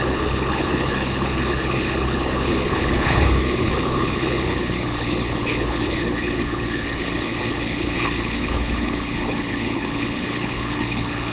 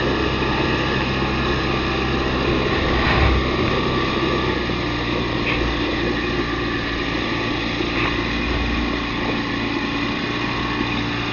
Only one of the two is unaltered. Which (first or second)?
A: second